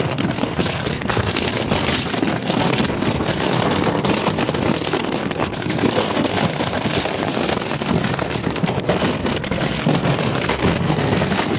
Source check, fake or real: fake